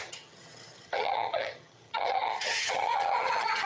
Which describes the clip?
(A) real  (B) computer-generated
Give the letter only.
B